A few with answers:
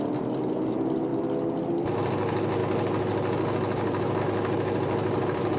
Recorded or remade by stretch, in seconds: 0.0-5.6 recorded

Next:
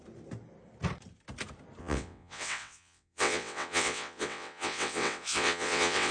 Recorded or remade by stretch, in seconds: 0.0-1.8 recorded; 1.8-6.1 remade

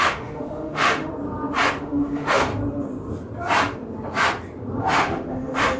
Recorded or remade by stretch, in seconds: 0.0-1.1 remade; 1.1-1.8 recorded; 1.8-2.5 remade; 2.5-4.8 recorded; 4.8-5.8 remade

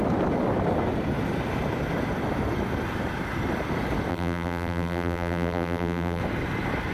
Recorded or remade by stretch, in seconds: 0.0-4.1 recorded; 4.1-6.2 remade; 6.2-6.9 recorded